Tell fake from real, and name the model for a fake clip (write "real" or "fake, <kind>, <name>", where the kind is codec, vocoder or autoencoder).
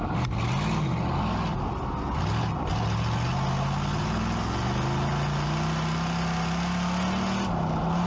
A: real